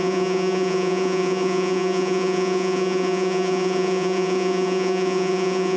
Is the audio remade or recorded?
remade